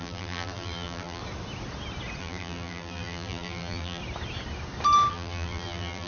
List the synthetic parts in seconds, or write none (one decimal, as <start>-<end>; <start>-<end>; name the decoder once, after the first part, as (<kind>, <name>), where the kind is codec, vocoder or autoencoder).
0.0-1.2 (vocoder, BigVGAN v2); 2.2-4.0; 5.1-6.1

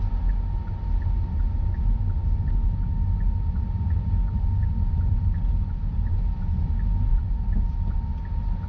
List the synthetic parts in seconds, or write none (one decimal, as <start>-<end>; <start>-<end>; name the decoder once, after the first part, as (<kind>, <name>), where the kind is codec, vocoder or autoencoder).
7.1-8.7 (vocoder, BigVGAN v2)

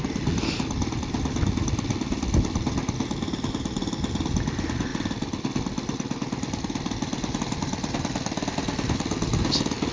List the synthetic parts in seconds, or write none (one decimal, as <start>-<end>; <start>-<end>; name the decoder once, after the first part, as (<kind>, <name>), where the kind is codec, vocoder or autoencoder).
none

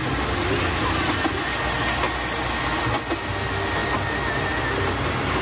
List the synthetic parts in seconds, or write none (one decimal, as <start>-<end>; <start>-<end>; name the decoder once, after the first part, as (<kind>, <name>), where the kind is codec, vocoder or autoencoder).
none

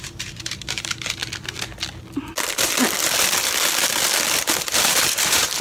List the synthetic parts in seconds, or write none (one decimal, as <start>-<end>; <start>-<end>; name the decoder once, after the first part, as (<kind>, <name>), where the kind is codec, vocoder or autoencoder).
0.0-1.2 (vocoder, BigVGAN v2); 4.6-5.6

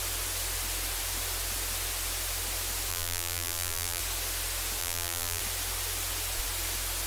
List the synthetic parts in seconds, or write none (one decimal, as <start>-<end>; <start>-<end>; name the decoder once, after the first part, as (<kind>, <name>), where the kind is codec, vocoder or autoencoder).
2.9-4.0 (vocoder, BigVGAN v2); 4.8-5.4

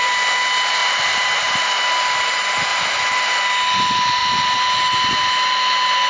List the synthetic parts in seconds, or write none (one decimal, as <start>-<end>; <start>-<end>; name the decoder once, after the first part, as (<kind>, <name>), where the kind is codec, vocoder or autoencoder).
0.8-1.6 (vocoder, BigVGAN v2); 2.7-3.4